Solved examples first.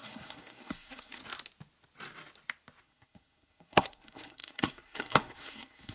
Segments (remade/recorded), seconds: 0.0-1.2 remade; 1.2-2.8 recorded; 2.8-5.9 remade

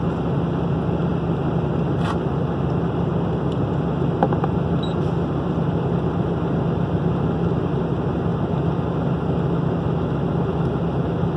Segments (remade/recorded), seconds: 0.0-11.4 recorded

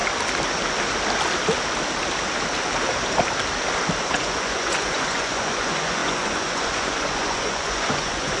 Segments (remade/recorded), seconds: 0.0-4.0 recorded; 4.0-8.4 remade

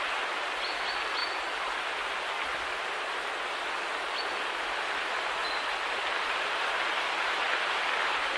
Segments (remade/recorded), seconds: 0.0-8.4 recorded

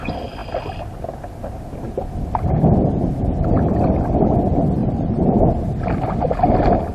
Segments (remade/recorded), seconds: 0.0-4.8 recorded; 4.8-5.4 remade; 5.4-6.9 recorded

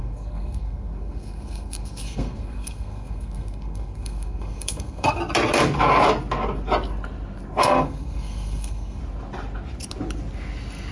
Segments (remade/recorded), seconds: 0.0-5.2 remade; 5.2-7.6 recorded; 7.6-9.0 remade; 9.0-10.9 recorded